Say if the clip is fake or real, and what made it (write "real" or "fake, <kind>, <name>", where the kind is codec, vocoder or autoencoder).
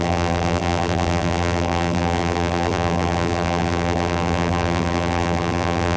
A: fake, vocoder, BigVGAN v2